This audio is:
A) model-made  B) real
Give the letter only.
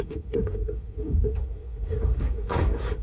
A